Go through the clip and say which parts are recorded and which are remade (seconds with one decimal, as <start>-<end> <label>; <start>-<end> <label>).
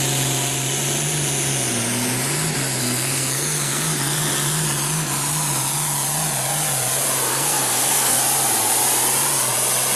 0.0-2.8 recorded; 2.8-4.2 remade; 4.2-7.3 recorded; 7.3-8.2 remade; 8.2-10.0 recorded